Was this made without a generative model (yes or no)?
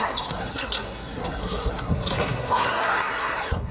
no